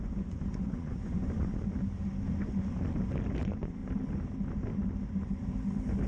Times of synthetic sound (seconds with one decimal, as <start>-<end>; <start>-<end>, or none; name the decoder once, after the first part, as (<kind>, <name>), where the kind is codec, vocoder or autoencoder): 0.0-1.5 (vocoder, Vocos); 3.4-3.8